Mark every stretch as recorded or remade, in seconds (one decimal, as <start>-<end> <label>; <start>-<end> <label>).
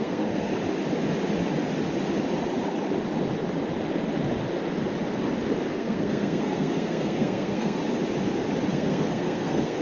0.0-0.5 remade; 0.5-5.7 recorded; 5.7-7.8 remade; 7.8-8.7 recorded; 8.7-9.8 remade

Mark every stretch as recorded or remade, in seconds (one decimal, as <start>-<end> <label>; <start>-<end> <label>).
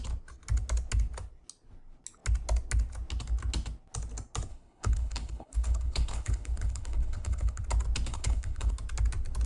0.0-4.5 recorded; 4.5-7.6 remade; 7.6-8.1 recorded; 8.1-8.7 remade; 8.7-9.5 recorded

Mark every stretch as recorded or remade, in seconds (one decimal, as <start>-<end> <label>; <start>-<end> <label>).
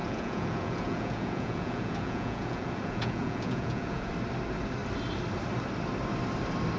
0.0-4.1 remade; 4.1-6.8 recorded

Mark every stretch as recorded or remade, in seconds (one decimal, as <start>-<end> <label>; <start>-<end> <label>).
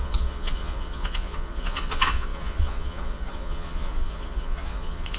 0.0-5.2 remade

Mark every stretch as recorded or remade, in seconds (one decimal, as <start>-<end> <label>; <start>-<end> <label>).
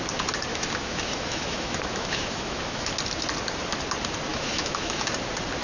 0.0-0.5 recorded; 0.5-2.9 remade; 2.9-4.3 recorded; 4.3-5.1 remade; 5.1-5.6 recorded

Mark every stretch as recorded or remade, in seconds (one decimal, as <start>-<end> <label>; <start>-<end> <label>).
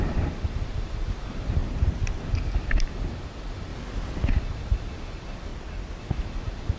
0.0-1.6 remade; 1.6-2.2 recorded; 2.2-3.7 remade; 3.7-4.3 recorded; 4.3-5.5 remade; 5.5-6.0 recorded; 6.0-6.8 remade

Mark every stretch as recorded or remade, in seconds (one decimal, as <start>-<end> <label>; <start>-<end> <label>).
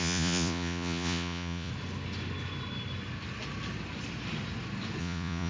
0.0-1.7 remade; 1.7-5.0 recorded; 5.0-5.5 remade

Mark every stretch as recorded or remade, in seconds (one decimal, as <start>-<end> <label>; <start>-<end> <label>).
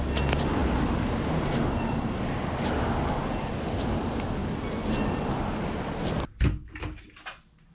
0.0-7.7 recorded